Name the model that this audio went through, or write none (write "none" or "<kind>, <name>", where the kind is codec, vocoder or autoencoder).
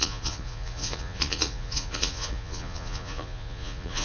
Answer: vocoder, Vocos